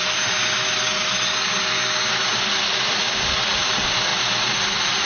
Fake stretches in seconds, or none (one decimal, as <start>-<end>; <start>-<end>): none

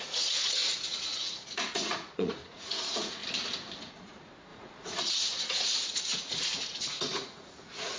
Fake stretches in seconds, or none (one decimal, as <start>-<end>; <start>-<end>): 0.0-3.2; 3.8-8.0

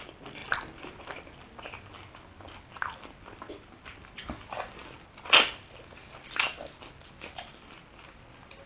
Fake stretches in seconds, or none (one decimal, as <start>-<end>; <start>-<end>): none

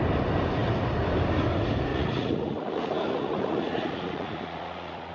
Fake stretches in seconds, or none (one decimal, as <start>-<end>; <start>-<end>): 1.9-5.1

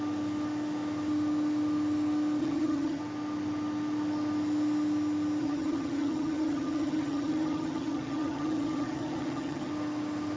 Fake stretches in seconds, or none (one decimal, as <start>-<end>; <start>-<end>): 2.4-3.0; 5.4-9.7

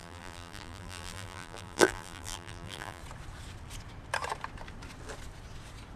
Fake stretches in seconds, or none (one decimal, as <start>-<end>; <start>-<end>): 0.0-3.0